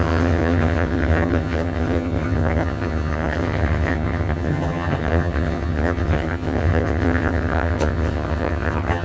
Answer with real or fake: fake